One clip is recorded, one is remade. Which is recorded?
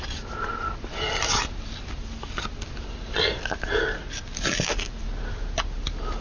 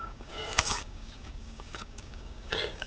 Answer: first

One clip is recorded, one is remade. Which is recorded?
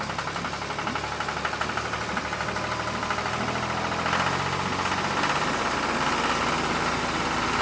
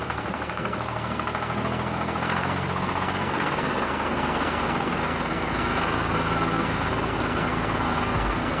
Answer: first